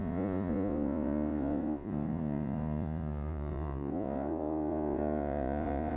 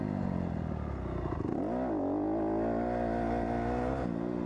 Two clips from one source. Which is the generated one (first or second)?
first